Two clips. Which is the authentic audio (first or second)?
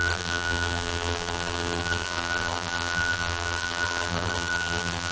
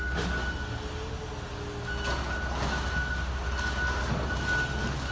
second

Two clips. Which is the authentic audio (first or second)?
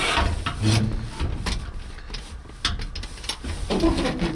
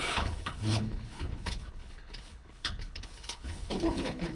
first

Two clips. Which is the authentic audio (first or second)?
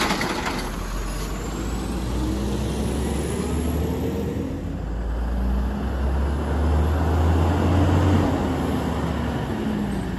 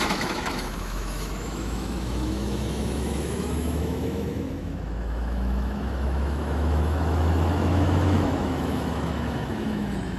first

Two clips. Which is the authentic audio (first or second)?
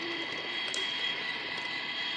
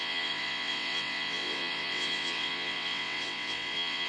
first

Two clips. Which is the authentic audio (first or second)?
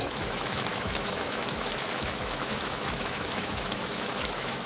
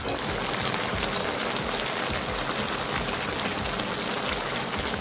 second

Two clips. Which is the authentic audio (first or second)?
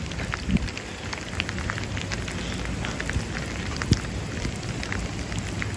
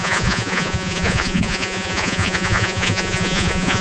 first